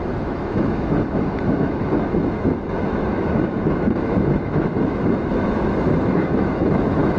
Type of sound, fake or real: fake